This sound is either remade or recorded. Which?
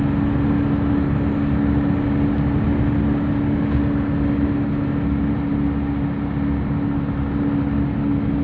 recorded